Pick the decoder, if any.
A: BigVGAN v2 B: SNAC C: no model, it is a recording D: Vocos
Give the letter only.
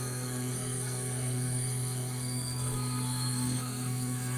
B